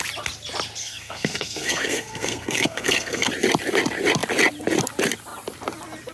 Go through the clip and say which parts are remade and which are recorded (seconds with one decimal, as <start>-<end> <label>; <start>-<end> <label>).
0.0-0.8 recorded; 0.8-3.3 remade; 3.3-6.1 recorded